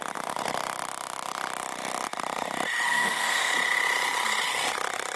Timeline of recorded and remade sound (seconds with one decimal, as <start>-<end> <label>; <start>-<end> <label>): 0.0-2.9 recorded; 2.9-3.5 remade; 3.5-5.2 recorded